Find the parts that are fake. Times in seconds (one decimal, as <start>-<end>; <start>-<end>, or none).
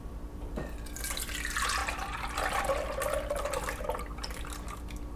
none